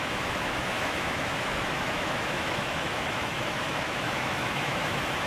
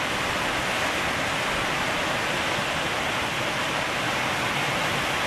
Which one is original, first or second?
second